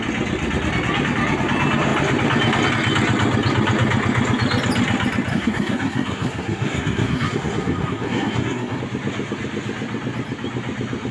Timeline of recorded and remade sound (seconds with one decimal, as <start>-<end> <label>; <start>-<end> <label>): 0.0-5.3 recorded; 5.3-8.8 remade; 8.8-11.1 recorded